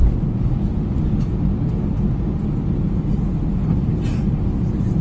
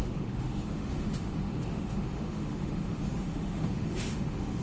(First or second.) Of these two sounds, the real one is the first